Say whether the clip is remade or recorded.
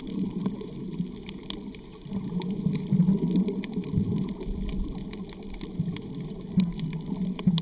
recorded